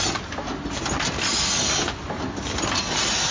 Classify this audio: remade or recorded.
recorded